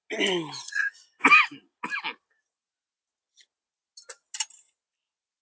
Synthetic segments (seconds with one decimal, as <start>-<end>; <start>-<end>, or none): none